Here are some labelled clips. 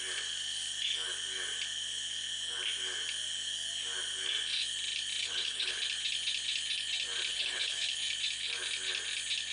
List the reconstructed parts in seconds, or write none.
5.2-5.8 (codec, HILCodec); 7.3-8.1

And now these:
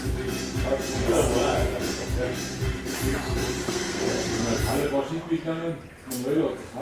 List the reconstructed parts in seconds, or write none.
3.6-4.1 (codec, SNAC)

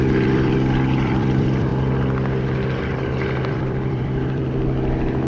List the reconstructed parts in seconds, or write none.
0.0-1.7 (vocoder, BigVGAN v2); 2.8-4.4

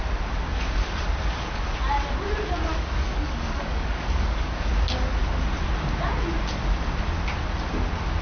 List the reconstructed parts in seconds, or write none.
2.7-4.7 (codec, DAC)

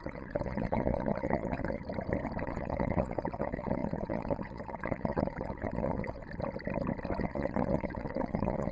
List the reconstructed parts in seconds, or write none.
0.0-1.8 (vocoder, WaveNeXt); 2.4-6.2; 7.2-8.7

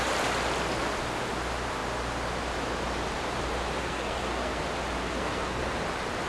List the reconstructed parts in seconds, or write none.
3.8-4.6 (codec, SNAC); 5.0-5.6

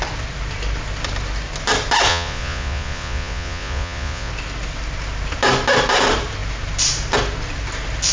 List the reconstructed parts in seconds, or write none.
2.1-4.3 (vocoder, Vocos)

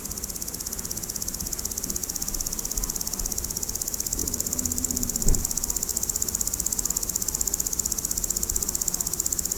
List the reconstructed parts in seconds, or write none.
4.2-5.4 (vocoder, BigVGAN v2)